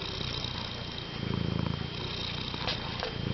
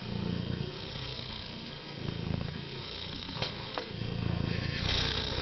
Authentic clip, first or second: first